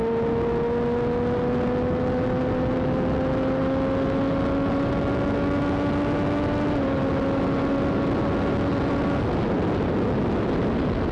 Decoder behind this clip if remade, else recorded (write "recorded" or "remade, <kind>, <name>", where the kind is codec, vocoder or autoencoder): recorded